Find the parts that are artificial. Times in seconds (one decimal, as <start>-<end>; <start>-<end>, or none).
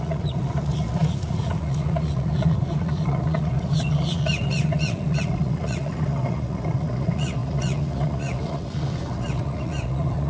0.0-10.3